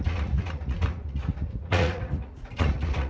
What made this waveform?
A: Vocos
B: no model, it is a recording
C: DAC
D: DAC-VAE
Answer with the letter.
A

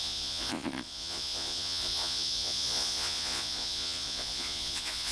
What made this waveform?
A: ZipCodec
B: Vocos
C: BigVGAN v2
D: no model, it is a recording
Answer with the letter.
B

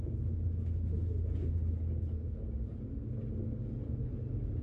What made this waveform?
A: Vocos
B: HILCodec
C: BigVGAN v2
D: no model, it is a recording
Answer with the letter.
D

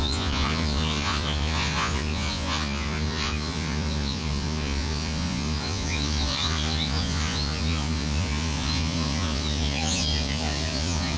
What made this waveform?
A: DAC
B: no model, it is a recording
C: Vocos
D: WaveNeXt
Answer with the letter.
C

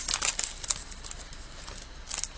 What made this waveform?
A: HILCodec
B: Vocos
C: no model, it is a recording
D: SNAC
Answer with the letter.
C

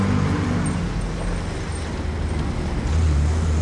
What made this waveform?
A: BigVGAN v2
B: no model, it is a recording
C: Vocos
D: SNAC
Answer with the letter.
B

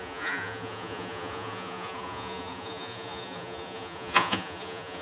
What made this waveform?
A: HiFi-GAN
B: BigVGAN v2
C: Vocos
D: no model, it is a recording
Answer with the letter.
C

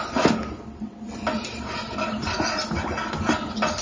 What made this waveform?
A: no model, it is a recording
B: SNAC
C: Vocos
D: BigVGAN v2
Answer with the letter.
A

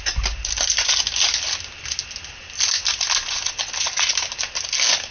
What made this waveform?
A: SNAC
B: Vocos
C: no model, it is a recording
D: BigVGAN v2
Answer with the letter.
C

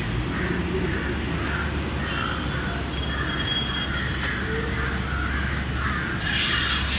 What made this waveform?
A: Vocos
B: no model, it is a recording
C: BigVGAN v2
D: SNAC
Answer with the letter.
B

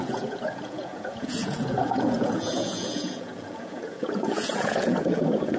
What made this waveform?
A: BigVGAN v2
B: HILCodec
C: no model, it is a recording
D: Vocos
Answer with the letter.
D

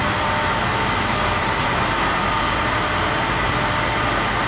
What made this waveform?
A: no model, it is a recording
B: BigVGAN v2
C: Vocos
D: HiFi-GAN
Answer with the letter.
A